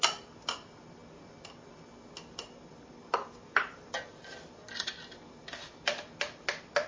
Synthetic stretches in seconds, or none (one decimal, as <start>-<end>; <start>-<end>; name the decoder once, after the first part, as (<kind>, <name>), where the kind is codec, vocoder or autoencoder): none

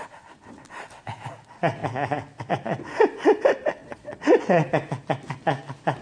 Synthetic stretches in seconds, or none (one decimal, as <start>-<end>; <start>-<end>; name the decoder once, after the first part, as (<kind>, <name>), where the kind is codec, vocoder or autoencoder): 3.8-4.7 (vocoder, Vocos)

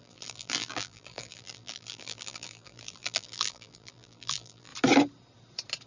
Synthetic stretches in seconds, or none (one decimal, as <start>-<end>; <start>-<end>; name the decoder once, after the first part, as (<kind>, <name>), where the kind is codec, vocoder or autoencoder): 0.0-4.7 (vocoder, BigVGAN v2)

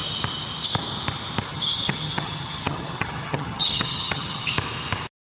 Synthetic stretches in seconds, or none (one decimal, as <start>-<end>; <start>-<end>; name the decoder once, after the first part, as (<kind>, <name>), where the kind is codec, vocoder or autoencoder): 1.5-4.5 (vocoder, HiFi-GAN)

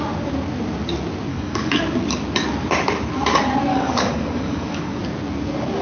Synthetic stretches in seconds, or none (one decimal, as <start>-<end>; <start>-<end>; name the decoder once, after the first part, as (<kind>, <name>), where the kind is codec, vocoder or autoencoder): 1.3-1.8 (codec, DAC); 3.7-5.0

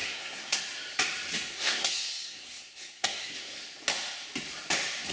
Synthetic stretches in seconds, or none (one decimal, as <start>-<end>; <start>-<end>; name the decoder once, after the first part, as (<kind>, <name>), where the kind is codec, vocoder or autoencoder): 0.0-0.6 (codec, SNAC); 1.5-3.6